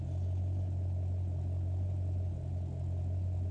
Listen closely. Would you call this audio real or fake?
real